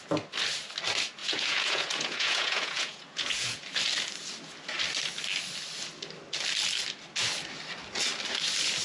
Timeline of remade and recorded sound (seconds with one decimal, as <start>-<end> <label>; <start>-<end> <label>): 0.0-1.2 recorded; 1.2-3.6 remade; 3.6-8.8 recorded